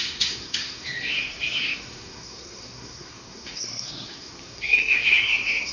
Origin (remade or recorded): remade